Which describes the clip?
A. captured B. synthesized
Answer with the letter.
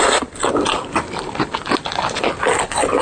A